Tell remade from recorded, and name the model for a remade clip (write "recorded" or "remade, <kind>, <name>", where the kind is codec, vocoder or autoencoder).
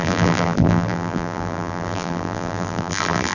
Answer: remade, vocoder, BigVGAN v2